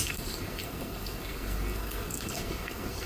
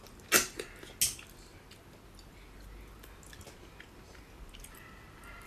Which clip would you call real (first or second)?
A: second